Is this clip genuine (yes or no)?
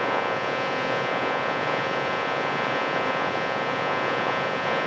no